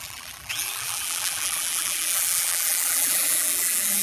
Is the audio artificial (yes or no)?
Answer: yes